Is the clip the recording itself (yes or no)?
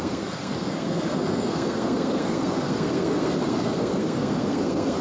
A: no